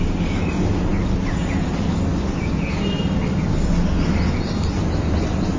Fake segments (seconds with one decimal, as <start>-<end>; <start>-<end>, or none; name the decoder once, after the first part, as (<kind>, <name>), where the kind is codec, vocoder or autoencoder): none